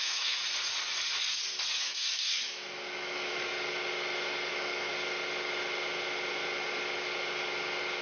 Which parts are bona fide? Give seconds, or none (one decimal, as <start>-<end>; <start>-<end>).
0.4-1.7; 3.5-4.5; 4.9-8.0